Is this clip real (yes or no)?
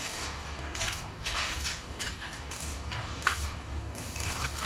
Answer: no